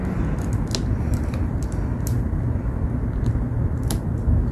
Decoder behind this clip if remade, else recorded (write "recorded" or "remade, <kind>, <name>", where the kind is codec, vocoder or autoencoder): recorded